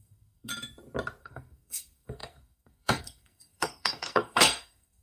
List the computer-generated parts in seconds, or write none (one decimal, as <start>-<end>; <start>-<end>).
0.0-0.5; 1.2-5.0